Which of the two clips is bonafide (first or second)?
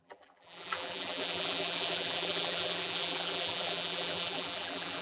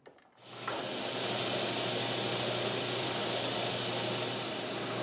second